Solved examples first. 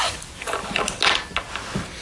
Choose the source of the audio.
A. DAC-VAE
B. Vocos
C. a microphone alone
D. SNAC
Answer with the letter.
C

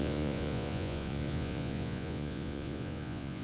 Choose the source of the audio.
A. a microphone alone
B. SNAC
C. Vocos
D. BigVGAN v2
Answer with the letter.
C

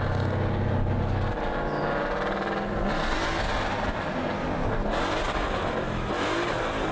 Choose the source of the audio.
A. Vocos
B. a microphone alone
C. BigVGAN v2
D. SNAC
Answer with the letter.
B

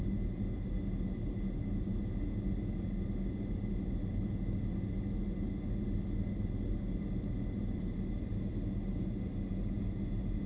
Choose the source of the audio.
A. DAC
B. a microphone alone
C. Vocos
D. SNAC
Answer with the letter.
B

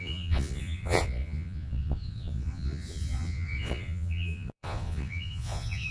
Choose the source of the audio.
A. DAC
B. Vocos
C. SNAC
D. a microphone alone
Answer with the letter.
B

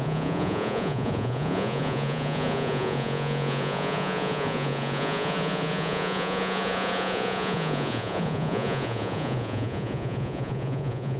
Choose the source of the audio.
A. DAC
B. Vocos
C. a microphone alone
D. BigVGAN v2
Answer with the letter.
B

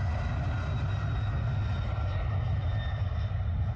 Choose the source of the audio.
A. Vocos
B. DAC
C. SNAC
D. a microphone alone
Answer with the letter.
D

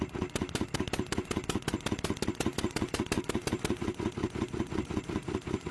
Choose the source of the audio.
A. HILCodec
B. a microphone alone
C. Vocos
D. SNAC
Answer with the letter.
B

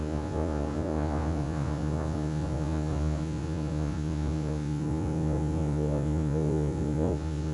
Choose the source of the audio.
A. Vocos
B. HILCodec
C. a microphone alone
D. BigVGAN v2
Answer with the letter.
A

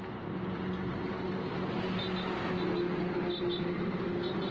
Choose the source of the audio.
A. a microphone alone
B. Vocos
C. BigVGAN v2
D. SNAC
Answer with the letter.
A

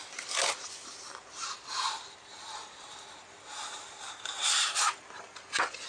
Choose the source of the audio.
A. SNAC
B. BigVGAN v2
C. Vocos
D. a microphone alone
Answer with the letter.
D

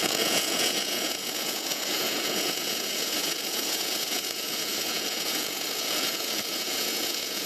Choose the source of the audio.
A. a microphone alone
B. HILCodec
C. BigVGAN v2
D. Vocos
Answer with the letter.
D